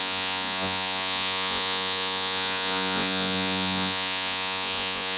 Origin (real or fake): fake